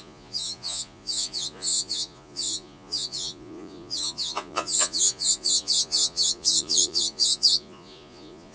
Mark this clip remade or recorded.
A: remade